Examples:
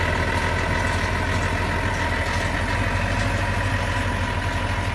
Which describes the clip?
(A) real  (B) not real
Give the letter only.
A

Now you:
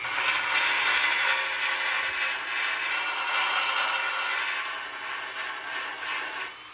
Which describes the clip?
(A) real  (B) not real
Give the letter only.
A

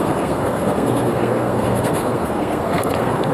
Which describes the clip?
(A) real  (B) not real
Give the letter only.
B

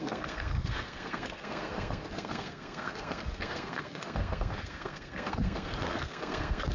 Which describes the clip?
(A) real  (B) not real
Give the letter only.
B